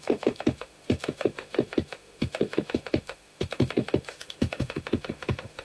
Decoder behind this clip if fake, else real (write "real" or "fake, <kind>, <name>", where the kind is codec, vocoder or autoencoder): fake, autoencoder, DAC-VAE